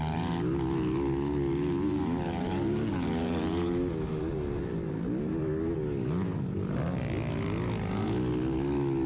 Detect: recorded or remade recorded